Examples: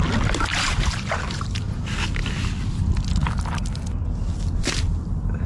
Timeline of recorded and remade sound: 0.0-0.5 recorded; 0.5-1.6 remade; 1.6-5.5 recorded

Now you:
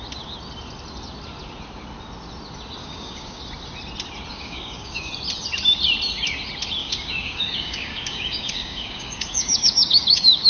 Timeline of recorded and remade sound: 0.0-2.8 recorded; 2.8-3.4 remade; 3.4-4.3 recorded; 4.3-5.1 remade; 5.1-6.8 recorded; 6.8-10.5 remade

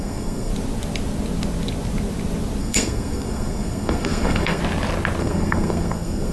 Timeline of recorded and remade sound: 0.0-0.5 remade; 0.5-2.6 recorded; 2.6-4.6 remade; 4.6-5.2 recorded; 5.2-6.3 remade

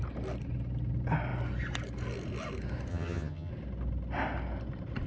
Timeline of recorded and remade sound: 0.0-2.9 recorded; 2.9-3.5 remade; 3.5-5.1 recorded